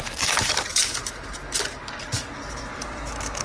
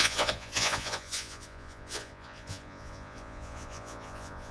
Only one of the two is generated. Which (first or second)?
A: second